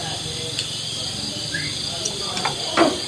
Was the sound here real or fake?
real